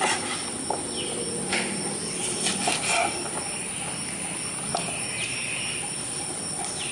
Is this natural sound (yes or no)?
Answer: yes